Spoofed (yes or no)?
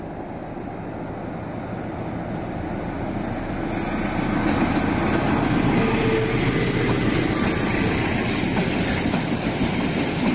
no